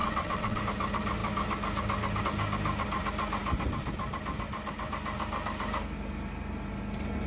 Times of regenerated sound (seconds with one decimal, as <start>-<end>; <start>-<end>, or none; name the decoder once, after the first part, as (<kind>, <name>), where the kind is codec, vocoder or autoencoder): 0.0-0.6 (vocoder, WaveNeXt)

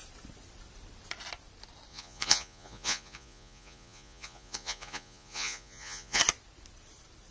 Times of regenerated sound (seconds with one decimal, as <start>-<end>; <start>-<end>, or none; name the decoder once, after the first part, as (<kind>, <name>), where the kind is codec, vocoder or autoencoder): 1.9-6.2 (vocoder, Vocos)